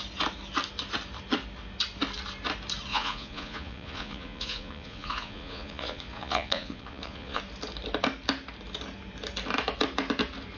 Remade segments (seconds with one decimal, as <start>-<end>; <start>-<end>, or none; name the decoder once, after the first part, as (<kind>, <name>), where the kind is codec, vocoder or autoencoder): 2.9-7.4 (vocoder, Vocos)